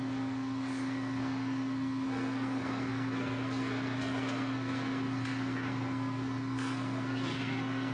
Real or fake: fake